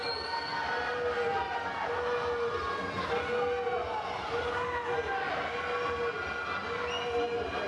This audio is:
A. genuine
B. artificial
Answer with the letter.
A